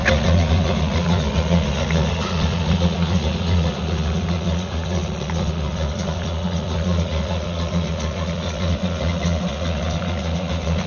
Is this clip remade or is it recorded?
remade